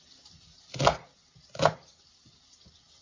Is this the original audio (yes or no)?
yes